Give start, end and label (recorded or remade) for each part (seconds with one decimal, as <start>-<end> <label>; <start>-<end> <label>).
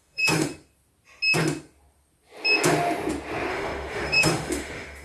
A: 0.0-0.5 remade; 0.5-3.5 recorded; 3.5-5.0 remade